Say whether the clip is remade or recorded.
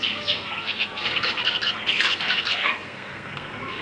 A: remade